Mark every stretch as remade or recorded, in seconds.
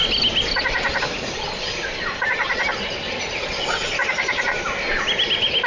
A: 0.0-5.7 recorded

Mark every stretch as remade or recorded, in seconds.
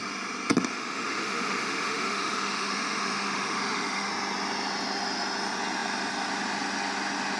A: 0.0-0.7 recorded; 0.7-4.1 remade; 4.1-7.4 recorded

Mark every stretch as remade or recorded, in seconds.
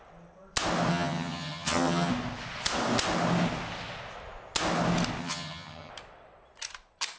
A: 0.0-0.9 recorded; 0.9-2.1 remade; 2.1-5.2 recorded; 5.2-5.9 remade; 5.9-7.2 recorded